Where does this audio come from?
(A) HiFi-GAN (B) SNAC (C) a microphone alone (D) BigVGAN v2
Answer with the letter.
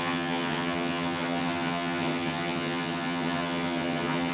A